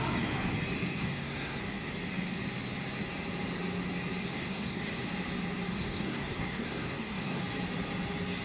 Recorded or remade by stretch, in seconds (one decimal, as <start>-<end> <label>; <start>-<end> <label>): 0.0-0.9 recorded; 0.9-1.6 remade; 1.6-4.2 recorded; 4.2-4.8 remade; 4.8-5.7 recorded; 5.7-7.4 remade; 7.4-8.4 recorded